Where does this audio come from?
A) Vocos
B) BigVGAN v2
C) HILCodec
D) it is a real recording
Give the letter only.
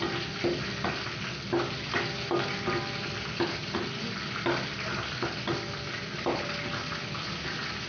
D